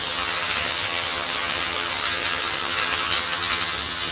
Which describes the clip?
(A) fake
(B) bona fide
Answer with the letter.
A